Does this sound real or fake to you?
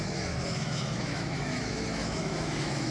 fake